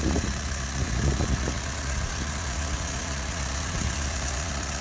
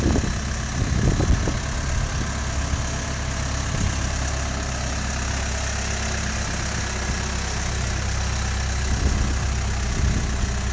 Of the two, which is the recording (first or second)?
second